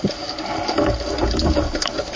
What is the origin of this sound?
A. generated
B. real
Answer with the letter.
B